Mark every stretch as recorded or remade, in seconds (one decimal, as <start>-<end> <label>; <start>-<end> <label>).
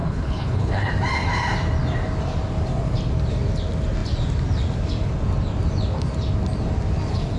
0.0-0.9 remade; 0.9-7.4 recorded